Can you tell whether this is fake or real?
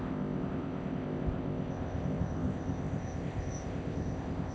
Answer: fake